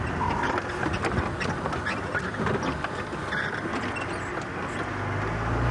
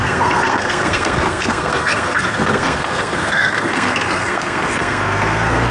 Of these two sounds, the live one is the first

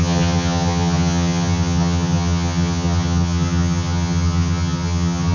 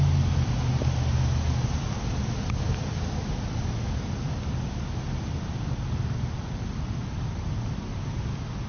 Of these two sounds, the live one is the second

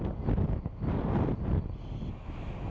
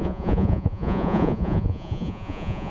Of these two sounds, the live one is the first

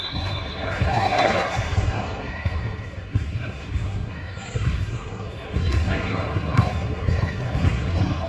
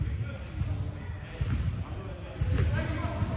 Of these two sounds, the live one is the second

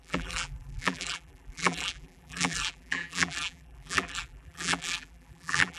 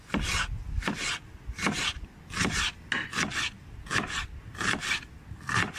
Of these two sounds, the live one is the second